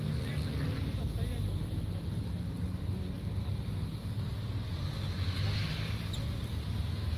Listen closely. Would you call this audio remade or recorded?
recorded